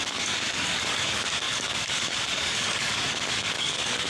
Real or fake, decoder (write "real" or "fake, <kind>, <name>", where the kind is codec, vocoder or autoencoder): fake, codec, DAC